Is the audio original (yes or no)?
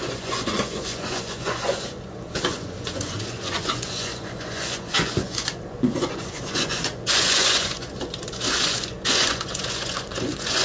no